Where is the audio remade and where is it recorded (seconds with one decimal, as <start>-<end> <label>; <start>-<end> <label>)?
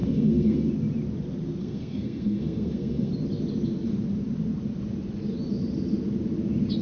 0.0-0.7 remade; 0.7-1.6 recorded; 1.6-3.1 remade; 3.1-6.8 recorded